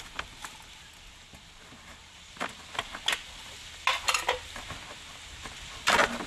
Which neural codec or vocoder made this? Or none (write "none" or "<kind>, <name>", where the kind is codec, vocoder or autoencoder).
none